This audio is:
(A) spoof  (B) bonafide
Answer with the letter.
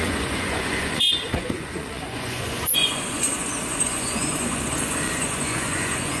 A